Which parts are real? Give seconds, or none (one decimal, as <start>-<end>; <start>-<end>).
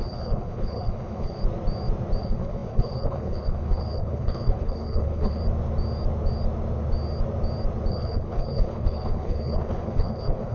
1.4-2.2; 5.4-7.9